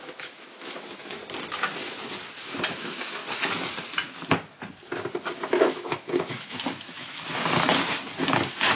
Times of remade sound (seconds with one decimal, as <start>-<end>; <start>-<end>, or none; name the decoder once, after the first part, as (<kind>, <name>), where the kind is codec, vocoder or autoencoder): 0.0-1.2 (autoencoder, DAC-VAE); 2.7-3.2; 5.5-7.4; 8.3-8.8